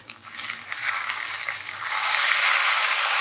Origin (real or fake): fake